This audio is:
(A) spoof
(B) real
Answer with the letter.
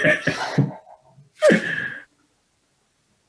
B